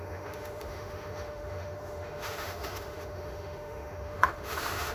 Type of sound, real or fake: fake